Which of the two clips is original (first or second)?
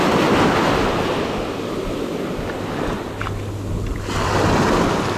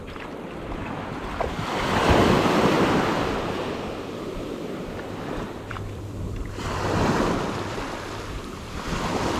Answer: first